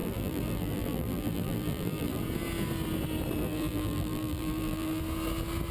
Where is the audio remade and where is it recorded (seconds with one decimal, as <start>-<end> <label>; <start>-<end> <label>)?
0.0-2.2 remade; 2.2-3.4 recorded; 3.4-5.0 remade; 5.0-5.7 recorded